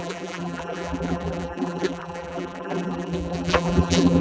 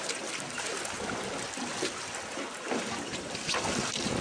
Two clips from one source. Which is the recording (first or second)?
second